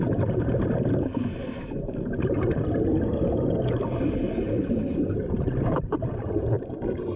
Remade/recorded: remade